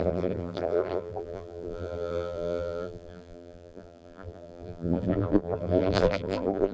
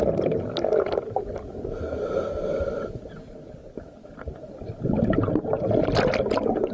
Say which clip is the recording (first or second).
second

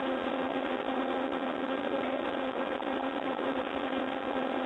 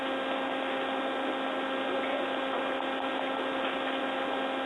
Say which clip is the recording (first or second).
second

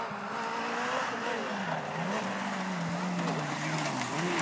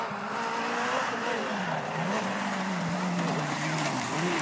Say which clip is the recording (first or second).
first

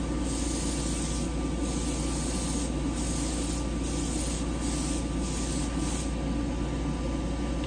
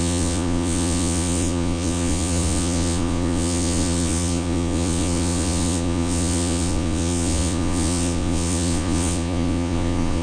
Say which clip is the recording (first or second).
first